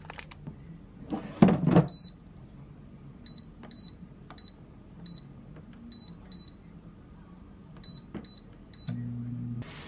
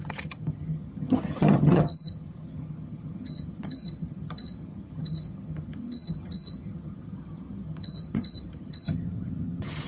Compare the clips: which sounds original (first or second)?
first